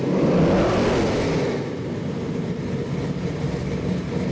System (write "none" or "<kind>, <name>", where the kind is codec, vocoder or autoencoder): none